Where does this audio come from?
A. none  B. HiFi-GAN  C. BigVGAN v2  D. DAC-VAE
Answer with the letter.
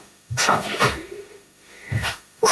D